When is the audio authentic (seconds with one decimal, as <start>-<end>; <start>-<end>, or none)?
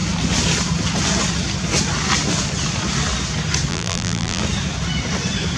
0.0-3.7; 4.4-5.6